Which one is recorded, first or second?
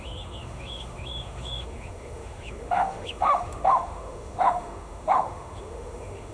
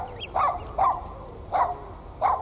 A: second